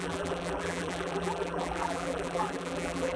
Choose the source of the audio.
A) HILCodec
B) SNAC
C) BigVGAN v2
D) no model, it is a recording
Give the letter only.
C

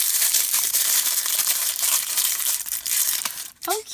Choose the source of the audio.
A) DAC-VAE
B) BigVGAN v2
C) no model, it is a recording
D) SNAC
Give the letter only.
B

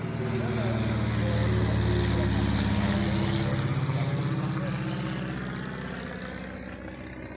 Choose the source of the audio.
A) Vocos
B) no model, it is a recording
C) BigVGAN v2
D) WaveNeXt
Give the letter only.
B